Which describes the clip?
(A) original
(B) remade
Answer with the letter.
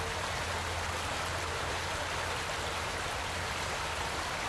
A